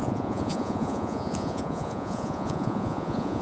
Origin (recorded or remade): remade